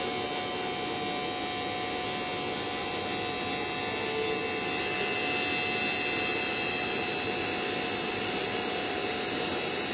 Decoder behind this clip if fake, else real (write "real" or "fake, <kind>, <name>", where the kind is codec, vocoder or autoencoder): real